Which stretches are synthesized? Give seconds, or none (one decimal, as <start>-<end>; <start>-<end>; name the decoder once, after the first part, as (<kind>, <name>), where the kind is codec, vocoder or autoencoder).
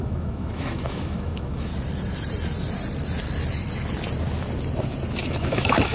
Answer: 0.0-1.7 (autoencoder, DAC-VAE); 5.2-5.9